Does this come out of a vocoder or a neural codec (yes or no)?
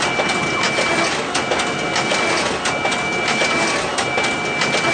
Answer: no